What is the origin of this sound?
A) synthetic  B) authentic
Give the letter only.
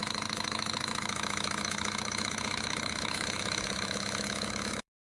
A